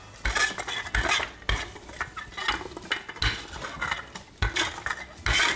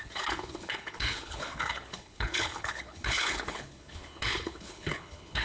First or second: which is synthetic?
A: second